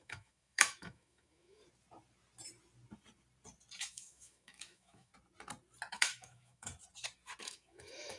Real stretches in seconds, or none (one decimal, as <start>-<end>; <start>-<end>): 1.6-3.8; 5.1-5.9; 6.7-7.4